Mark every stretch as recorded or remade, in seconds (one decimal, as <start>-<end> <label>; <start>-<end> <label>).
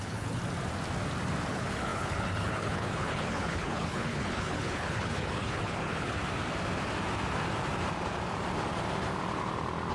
0.0-0.4 remade; 0.4-1.5 recorded; 1.5-6.2 remade; 6.2-9.9 recorded